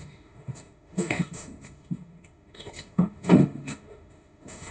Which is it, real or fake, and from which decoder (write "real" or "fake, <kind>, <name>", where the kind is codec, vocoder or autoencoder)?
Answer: fake, autoencoder, DAC-VAE